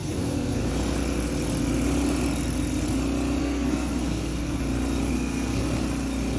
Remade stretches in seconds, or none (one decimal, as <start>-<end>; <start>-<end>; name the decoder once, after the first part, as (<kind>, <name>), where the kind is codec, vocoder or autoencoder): 0.0-0.7 (codec, SNAC); 3.4-4.6; 5.1-5.6